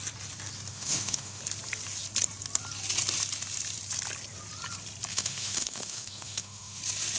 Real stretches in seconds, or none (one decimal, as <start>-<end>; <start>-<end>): 0.0-0.7; 1.4-5.1; 6.8-7.2